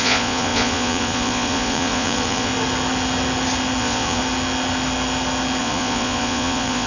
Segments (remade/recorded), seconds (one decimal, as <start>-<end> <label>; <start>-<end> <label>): 0.0-2.5 remade; 2.5-3.8 recorded; 3.8-4.2 remade; 4.2-5.6 recorded; 5.6-6.9 remade